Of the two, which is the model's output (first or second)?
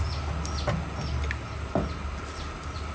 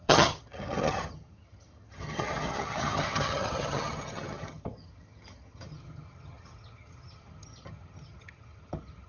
second